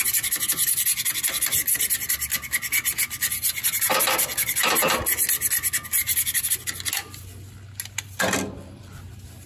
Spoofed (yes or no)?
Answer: no